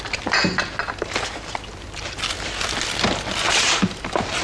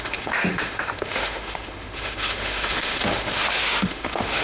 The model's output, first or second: second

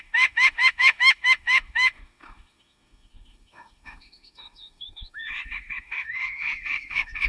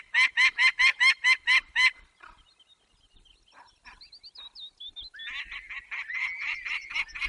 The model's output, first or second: first